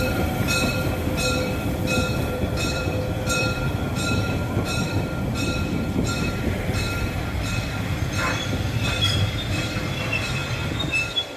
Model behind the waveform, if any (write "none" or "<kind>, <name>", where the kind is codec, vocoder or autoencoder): vocoder, BigVGAN v2